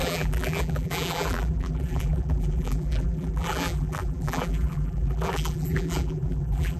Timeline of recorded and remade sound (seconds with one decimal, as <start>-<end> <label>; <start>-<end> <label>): 0.0-6.8 remade